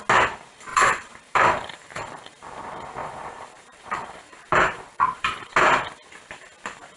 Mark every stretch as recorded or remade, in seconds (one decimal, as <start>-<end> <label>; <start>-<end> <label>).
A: 0.0-0.7 recorded; 0.7-2.2 remade; 2.2-3.0 recorded; 3.0-5.5 remade; 5.5-7.0 recorded